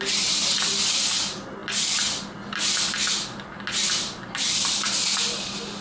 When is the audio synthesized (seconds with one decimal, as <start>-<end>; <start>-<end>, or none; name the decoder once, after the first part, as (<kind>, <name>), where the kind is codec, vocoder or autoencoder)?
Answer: none